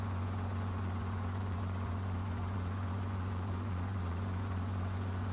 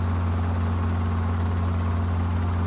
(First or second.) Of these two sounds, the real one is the second